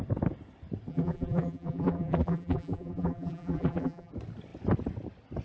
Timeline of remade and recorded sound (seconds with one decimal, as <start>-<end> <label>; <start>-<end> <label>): 0.0-0.9 recorded; 0.9-4.1 remade; 4.1-5.4 recorded